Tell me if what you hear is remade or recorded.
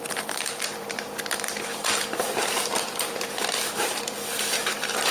remade